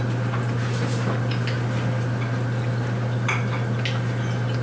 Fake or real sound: real